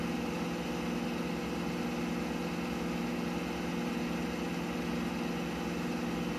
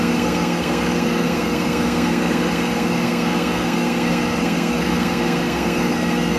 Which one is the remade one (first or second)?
second